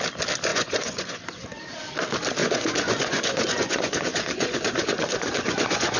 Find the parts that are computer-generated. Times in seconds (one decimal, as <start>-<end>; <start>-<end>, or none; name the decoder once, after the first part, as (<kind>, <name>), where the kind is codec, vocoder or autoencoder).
0.5-1.4 (vocoder, Vocos); 2.4-6.0